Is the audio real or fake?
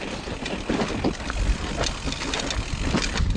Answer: real